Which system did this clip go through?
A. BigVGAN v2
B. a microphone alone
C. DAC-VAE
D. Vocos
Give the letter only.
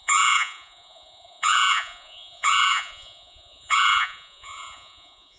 D